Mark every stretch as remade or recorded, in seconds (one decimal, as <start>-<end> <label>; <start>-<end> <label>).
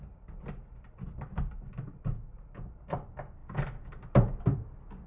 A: 0.0-5.1 recorded